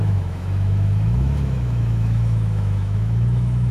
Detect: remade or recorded remade